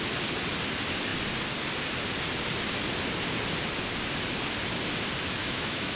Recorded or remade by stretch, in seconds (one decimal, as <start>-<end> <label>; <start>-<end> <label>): 0.0-5.4 recorded; 5.4-6.0 remade